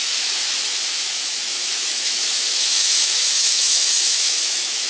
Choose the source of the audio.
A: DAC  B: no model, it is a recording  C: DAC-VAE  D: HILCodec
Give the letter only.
C